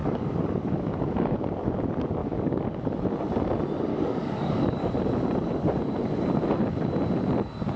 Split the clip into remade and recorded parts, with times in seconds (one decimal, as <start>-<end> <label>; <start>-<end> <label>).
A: 0.0-1.4 remade; 1.4-2.2 recorded; 2.2-2.8 remade; 2.8-3.9 recorded; 3.9-4.9 remade; 4.9-7.8 recorded